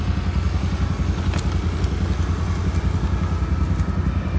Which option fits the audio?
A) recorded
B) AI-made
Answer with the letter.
A